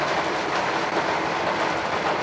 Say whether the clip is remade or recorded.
remade